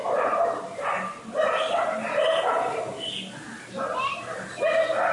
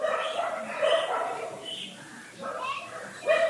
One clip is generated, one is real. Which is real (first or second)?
first